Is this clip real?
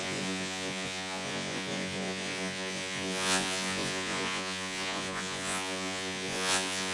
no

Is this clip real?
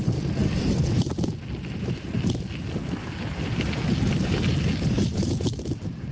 yes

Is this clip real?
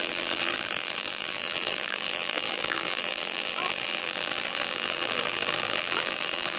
no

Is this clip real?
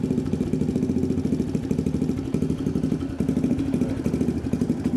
yes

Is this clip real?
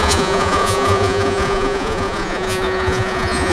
no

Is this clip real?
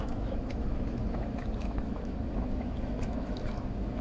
no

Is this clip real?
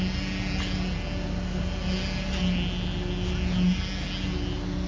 yes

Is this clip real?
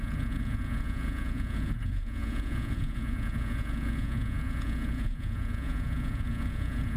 no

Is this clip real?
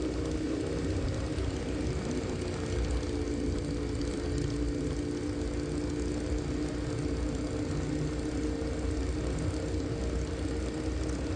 yes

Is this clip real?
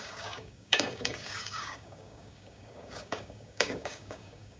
no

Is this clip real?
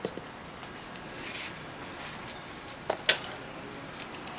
yes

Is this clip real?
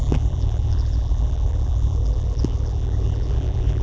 no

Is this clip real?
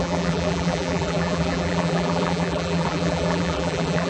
no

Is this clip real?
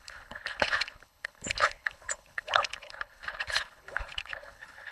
no